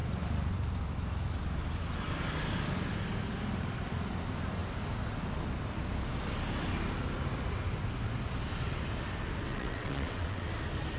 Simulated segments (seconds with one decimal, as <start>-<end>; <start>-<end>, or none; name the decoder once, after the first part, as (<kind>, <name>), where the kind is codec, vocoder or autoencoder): 9.5-10.5 (vocoder, WaveNeXt)